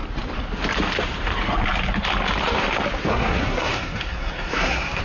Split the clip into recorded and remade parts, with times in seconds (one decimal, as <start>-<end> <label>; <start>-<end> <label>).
0.0-3.1 recorded; 3.1-5.0 remade